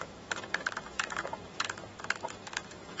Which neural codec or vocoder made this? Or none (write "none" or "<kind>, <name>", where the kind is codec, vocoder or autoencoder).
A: autoencoder, DAC-VAE